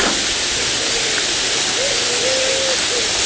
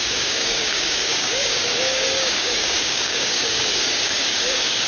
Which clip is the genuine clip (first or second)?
first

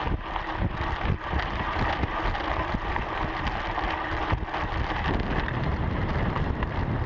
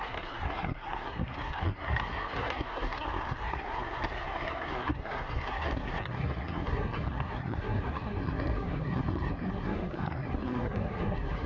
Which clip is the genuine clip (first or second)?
first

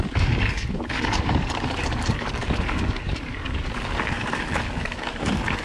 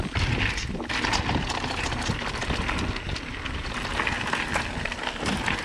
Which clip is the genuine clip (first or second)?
second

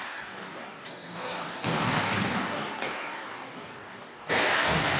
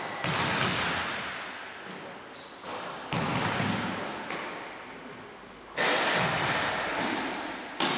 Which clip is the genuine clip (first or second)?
second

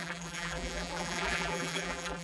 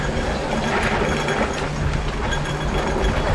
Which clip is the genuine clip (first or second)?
second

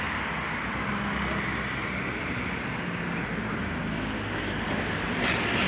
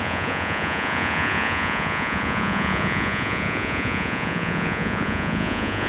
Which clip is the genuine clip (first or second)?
first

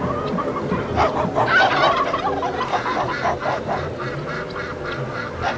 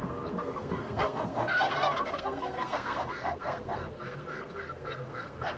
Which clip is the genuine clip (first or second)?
first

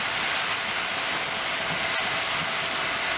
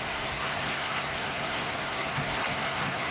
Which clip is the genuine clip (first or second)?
first